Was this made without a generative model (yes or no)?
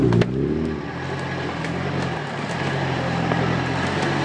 yes